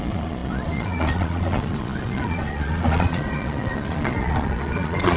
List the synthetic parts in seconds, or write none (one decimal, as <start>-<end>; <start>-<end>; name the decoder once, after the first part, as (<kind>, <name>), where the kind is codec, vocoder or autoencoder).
0.0-5.2 (vocoder, Vocos)